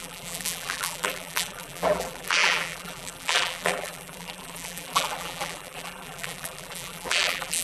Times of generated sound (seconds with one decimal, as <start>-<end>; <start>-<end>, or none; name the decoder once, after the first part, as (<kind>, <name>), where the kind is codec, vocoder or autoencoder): 0.0-7.6 (vocoder, BigVGAN v2)